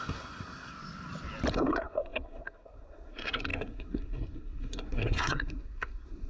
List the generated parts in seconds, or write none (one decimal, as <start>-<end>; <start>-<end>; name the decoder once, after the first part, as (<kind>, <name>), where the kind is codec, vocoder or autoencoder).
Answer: 0.0-0.7 (codec, SNAC); 1.5-6.3